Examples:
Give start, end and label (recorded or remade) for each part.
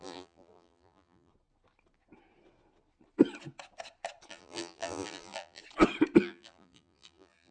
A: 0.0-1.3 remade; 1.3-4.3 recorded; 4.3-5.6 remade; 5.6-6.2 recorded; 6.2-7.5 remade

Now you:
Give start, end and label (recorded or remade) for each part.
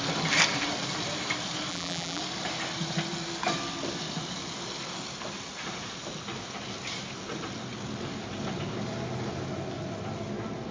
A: 0.0-1.7 recorded; 1.7-2.2 remade; 2.2-10.7 recorded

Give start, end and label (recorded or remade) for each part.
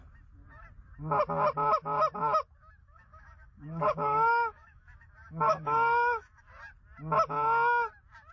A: 0.0-2.8 recorded; 2.8-6.4 remade; 6.4-8.3 recorded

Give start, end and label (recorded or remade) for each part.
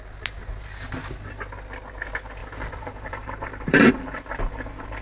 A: 0.0-2.4 recorded; 2.4-3.9 remade; 3.9-5.0 recorded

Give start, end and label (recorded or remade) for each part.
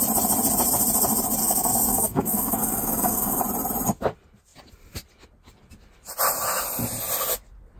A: 0.0-1.4 recorded; 1.4-3.4 remade; 3.4-7.8 recorded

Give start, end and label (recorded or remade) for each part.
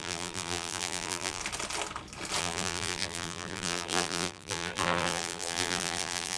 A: 0.0-1.4 remade; 1.4-2.4 recorded; 2.4-6.4 remade